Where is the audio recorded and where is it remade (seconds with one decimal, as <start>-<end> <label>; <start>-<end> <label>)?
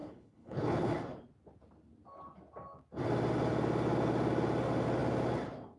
0.0-0.9 remade; 0.9-5.8 recorded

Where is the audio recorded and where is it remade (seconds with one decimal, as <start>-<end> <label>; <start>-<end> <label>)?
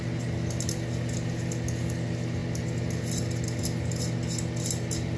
0.0-5.2 recorded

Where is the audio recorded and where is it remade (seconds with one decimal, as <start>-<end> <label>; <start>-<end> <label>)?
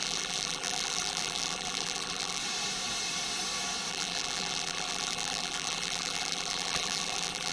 0.0-2.4 remade; 2.4-3.9 recorded; 3.9-7.5 remade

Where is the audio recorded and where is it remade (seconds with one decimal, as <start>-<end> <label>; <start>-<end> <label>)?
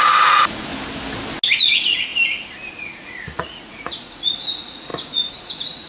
0.0-0.7 remade; 0.7-1.6 recorded; 1.6-2.1 remade; 2.1-2.7 recorded; 2.7-5.9 remade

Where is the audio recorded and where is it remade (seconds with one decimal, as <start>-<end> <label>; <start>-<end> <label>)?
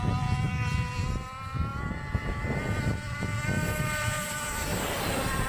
0.0-4.7 recorded; 4.7-5.5 remade